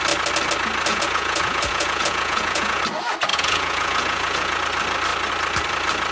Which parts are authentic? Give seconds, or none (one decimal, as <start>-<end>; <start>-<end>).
0.0-0.9; 2.8-3.3; 4.6-6.1

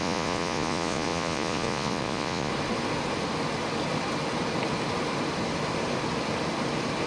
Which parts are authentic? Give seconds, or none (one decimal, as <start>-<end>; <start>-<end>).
2.5-7.1